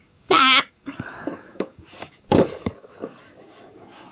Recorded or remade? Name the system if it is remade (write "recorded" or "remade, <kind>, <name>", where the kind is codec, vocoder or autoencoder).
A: remade, codec, DAC